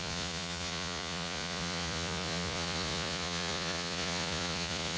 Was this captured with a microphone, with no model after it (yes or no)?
no